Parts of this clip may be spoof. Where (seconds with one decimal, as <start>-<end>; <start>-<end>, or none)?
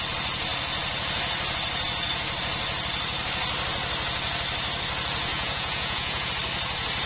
5.3-6.3